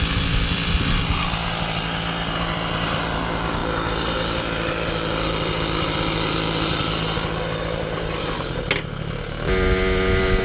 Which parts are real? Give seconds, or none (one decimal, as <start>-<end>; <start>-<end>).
0.0-10.4